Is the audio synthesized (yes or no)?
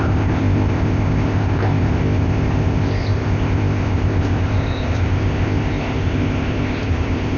yes